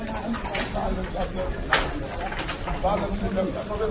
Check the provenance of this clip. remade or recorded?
remade